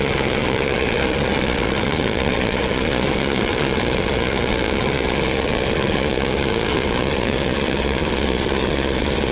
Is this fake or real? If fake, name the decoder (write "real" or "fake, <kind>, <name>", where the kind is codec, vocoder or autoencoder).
fake, vocoder, Vocos